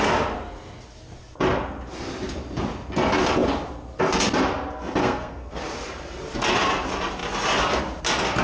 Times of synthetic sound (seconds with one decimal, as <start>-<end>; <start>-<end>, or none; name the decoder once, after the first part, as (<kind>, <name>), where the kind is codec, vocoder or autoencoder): 5.0-5.6 (codec, SNAC)